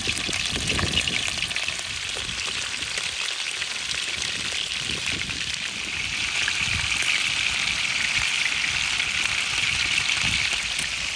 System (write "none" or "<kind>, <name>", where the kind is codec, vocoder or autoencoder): none